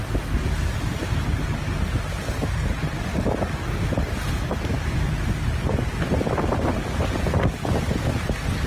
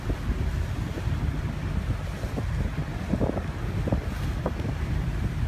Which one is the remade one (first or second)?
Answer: second